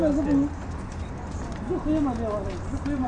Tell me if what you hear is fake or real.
real